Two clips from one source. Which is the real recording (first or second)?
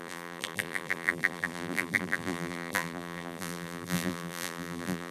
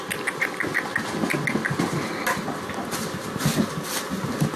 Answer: second